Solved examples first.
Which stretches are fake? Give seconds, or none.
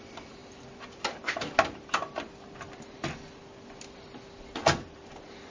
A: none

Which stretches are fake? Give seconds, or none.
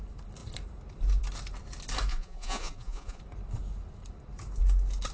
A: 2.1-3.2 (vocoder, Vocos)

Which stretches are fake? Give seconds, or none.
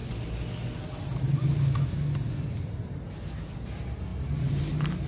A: none